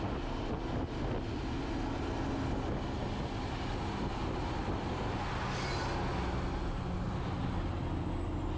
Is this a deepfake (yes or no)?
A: no